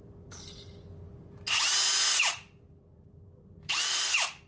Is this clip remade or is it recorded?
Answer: recorded